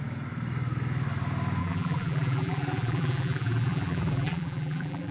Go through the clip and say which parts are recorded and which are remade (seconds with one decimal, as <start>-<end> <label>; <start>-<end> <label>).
0.0-1.6 recorded; 1.6-5.1 remade